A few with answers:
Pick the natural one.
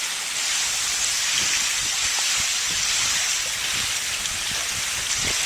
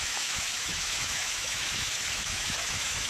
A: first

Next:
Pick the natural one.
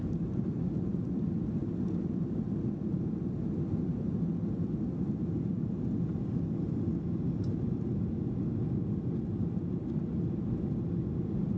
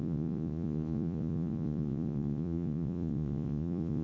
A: first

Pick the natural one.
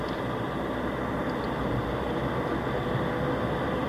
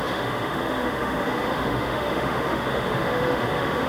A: first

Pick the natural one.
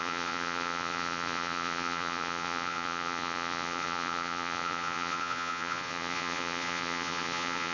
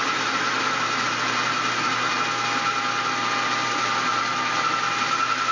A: second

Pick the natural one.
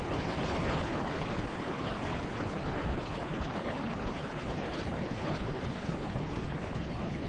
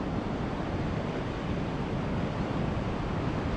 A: second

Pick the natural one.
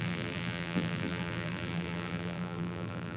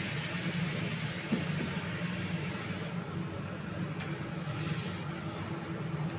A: second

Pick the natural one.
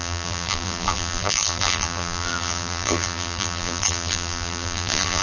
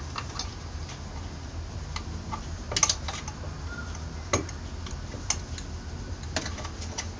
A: second